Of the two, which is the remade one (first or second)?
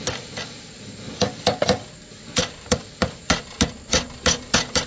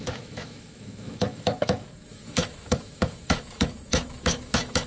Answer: second